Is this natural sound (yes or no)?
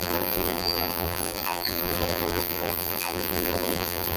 no